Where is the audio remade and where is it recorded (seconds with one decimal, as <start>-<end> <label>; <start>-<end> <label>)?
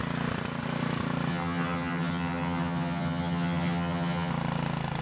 0.0-1.3 recorded; 1.3-4.3 remade; 4.3-5.0 recorded